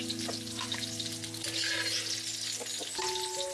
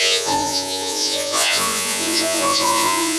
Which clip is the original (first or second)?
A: first